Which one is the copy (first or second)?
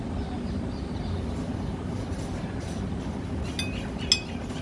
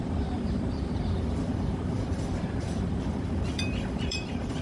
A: second